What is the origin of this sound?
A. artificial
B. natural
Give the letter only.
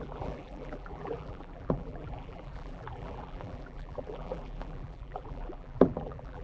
A